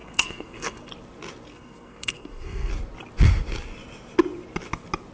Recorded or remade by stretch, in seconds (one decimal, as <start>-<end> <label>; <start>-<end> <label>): 0.0-0.9 remade; 0.9-1.5 recorded; 1.5-2.7 remade; 2.7-5.1 recorded